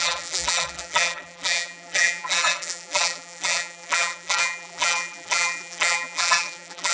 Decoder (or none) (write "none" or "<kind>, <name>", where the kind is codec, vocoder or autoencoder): vocoder, BigVGAN v2